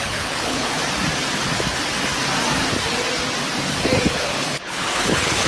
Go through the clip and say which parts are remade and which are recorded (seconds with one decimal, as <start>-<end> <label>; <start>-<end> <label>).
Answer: 0.0-0.8 remade; 0.8-4.1 recorded; 4.1-5.5 remade